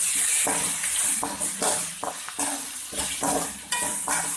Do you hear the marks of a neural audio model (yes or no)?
no